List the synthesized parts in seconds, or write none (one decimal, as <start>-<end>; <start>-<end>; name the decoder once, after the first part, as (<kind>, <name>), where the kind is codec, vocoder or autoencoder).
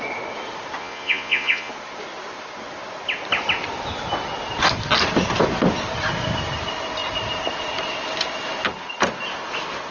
0.8-1.7 (vocoder, Vocos)